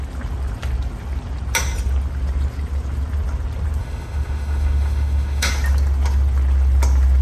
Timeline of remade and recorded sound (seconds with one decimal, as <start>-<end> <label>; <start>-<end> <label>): 0.0-3.8 recorded; 3.8-5.5 remade; 5.5-7.2 recorded